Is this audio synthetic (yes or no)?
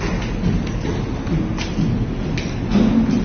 no